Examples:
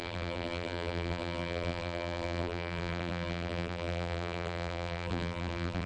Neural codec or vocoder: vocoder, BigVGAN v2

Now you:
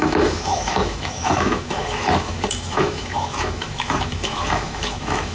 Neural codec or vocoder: autoencoder, DAC-VAE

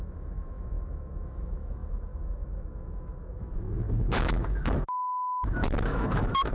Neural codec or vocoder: autoencoder, DAC-VAE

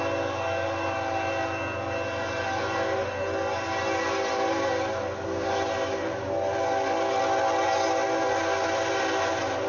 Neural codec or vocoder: none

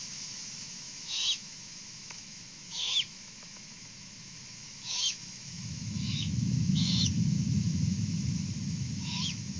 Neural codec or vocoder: autoencoder, DAC-VAE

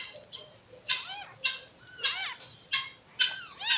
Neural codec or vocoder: none